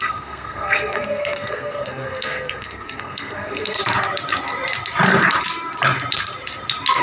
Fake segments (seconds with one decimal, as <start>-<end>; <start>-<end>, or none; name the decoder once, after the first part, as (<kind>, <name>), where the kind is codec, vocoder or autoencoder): 0.0-3.8 (codec, SNAC)